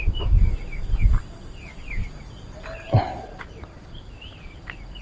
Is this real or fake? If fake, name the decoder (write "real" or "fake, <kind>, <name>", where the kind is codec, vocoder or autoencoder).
real